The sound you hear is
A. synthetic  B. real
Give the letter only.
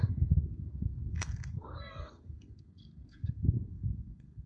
A